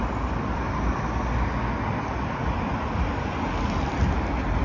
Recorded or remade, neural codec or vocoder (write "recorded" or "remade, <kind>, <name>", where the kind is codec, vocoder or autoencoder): recorded